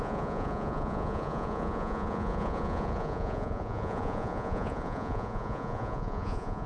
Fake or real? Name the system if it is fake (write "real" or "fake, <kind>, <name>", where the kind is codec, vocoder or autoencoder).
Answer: fake, vocoder, Vocos